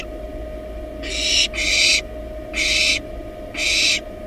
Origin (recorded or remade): recorded